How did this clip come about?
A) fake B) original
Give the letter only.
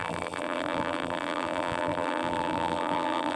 A